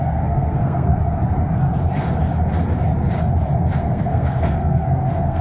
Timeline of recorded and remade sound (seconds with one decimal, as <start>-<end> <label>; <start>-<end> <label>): 0.0-0.9 remade; 0.9-3.8 recorded; 3.8-5.4 remade